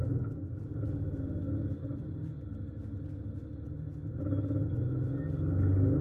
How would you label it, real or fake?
real